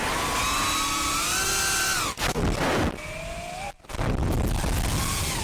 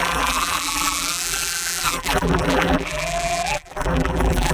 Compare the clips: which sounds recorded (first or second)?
first